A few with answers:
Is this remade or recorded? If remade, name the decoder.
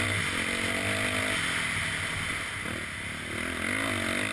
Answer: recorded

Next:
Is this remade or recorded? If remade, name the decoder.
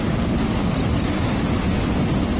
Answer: recorded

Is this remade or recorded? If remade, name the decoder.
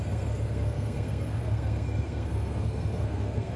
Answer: remade, codec, SNAC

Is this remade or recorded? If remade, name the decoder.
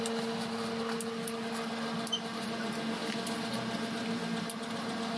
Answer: recorded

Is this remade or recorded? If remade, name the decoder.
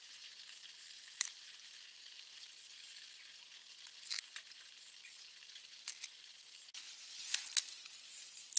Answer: recorded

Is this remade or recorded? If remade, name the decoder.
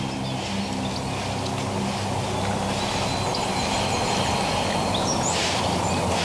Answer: recorded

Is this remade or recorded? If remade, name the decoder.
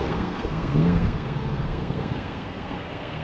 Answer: remade, codec, SNAC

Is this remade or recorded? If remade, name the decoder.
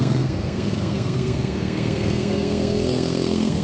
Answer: remade, codec, SNAC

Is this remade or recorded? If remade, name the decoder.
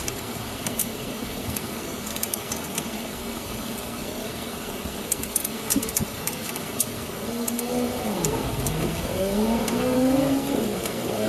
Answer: remade, codec, SNAC